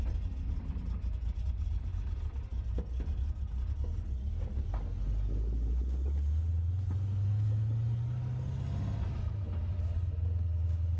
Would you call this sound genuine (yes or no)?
yes